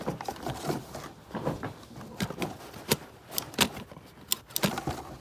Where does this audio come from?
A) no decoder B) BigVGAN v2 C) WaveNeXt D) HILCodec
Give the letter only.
A